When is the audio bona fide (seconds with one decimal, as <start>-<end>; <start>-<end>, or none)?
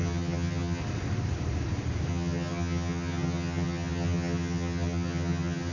0.8-2.1